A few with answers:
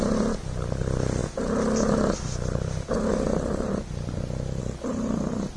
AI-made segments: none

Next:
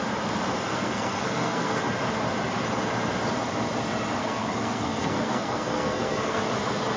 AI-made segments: 0.7-1.8 (codec, SNAC); 4.2-6.4

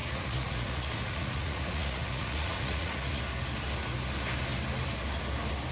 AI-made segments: 0.0-3.2 (vocoder, Vocos)

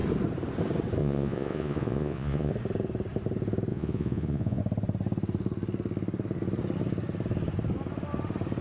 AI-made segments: 1.0-2.5 (vocoder, Vocos); 3.7-4.6

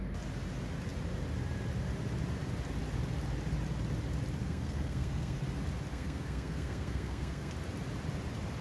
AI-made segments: 4.4-5.4 (codec, SNAC); 5.9-7.5

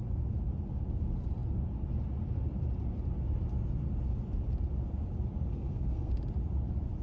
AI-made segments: 5.5-6.1 (codec, SNAC)

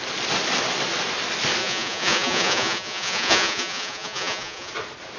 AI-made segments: 1.6-4.7 (vocoder, Vocos)

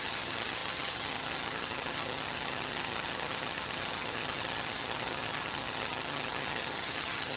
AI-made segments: 0.0-7.4 (vocoder, HiFi-GAN)